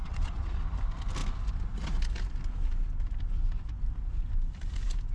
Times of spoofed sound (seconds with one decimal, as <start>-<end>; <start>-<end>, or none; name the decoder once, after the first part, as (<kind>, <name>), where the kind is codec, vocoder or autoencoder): 0.0-0.6 (vocoder, Vocos)